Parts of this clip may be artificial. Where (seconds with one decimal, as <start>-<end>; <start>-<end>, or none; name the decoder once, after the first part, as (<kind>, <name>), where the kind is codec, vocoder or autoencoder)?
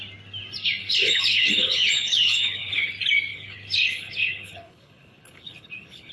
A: 0.8-2.9 (codec, HILCodec); 3.3-6.1